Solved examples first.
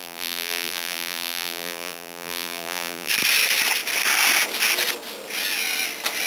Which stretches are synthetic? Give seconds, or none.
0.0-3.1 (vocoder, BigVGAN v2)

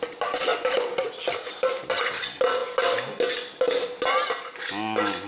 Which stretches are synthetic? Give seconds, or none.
0.5-2.1 (vocoder, BigVGAN v2)

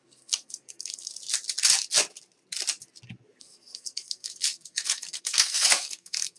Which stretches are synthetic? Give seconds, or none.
0.0-1.1 (codec, SNAC); 3.4-6.4